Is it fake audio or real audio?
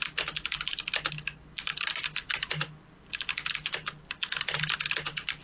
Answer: real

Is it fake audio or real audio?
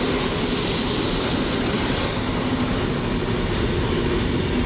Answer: real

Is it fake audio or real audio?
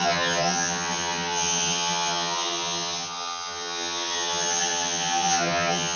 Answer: fake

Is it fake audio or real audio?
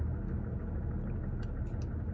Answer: real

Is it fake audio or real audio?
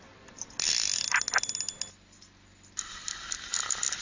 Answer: real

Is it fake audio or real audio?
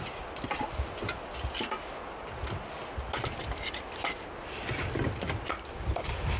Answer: real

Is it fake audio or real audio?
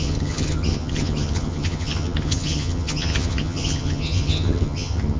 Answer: fake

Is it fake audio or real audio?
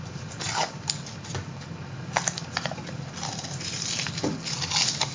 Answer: real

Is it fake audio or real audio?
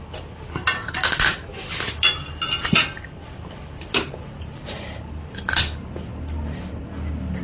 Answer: real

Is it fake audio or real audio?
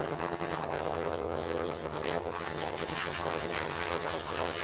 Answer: fake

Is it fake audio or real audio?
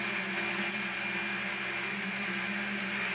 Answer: real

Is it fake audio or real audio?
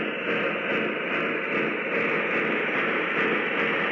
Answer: real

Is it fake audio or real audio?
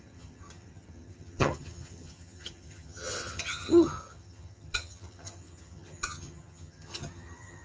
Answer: fake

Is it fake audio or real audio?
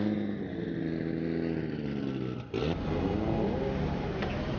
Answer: real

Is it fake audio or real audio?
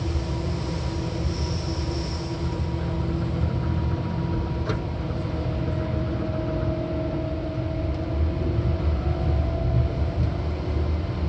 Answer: real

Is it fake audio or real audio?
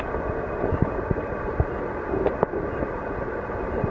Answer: real